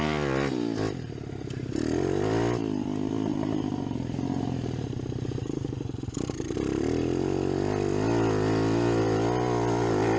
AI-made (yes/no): no